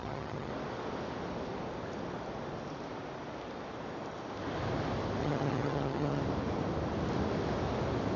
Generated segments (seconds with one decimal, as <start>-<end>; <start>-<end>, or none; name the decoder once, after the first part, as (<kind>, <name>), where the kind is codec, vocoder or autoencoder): 0.0-0.5 (vocoder, HiFi-GAN); 5.2-6.2